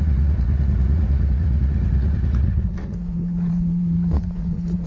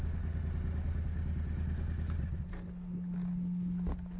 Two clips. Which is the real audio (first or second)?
second